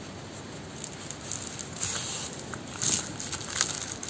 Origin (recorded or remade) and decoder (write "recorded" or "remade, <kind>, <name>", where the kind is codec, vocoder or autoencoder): recorded